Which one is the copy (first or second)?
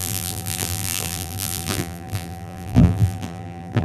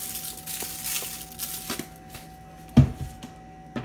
first